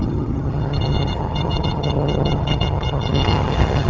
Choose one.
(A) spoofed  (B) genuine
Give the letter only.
A